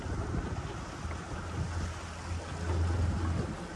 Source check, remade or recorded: recorded